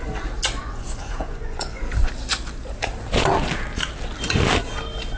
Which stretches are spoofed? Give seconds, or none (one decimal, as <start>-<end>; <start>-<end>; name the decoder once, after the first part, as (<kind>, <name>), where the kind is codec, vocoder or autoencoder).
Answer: 0.6-1.8 (vocoder, Vocos)